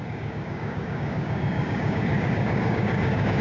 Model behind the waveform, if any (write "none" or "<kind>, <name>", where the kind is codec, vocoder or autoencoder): codec, DAC